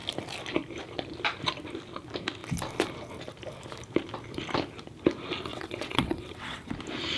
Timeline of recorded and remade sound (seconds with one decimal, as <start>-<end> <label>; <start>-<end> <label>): 0.0-5.5 recorded; 5.5-6.7 remade; 6.7-7.2 recorded